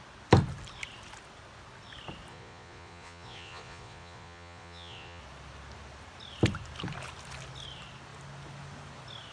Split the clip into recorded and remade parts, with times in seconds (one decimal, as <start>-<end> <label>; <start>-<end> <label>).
0.0-2.3 recorded; 2.3-5.2 remade; 5.2-9.3 recorded